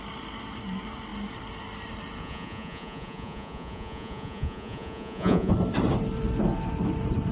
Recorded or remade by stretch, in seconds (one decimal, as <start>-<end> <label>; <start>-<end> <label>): 0.0-2.2 recorded; 2.2-5.5 remade; 5.5-7.3 recorded